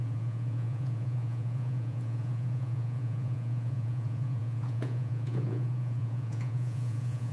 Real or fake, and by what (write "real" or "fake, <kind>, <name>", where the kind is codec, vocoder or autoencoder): fake, vocoder, Vocos